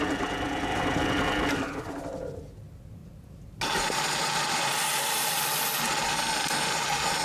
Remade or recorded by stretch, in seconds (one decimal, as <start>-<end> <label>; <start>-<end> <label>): 0.0-7.2 recorded